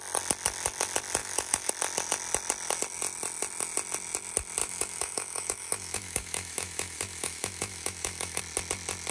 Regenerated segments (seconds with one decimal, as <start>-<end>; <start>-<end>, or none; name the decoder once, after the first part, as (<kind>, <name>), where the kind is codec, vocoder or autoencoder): 1.2-1.7 (autoencoder, DAC-VAE); 4.6-8.4